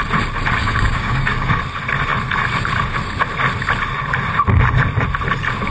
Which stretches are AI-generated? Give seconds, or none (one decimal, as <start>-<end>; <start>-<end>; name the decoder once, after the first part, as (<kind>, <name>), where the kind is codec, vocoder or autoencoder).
0.6-1.6 (codec, DAC)